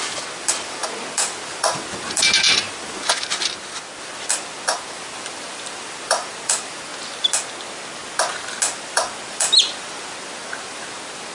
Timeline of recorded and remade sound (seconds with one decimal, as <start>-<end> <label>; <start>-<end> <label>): 0.0-6.9 remade; 6.9-8.8 recorded; 8.8-11.3 remade